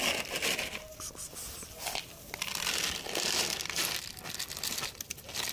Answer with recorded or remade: recorded